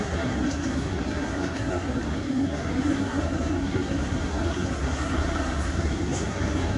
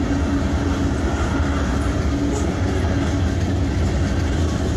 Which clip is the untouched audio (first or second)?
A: second